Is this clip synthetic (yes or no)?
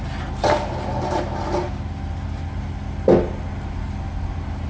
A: no